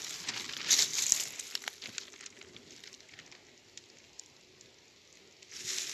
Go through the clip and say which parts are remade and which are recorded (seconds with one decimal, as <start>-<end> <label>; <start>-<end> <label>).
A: 0.0-5.9 recorded